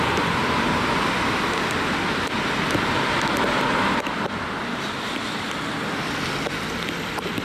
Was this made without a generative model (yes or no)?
no